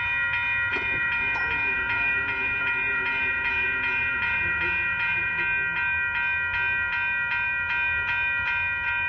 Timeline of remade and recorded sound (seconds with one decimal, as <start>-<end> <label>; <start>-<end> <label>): 0.0-0.7 recorded; 0.7-5.4 remade; 5.4-9.1 recorded